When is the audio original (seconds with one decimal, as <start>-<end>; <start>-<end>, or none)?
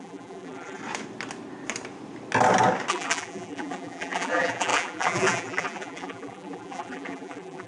0.8-2.9